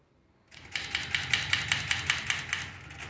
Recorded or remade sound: recorded